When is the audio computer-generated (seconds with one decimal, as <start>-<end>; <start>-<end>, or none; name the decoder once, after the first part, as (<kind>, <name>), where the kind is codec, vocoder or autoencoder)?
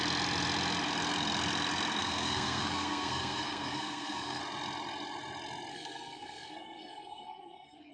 2.0-4.4 (codec, SNAC); 5.7-7.9